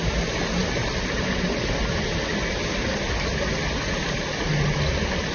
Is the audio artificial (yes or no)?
no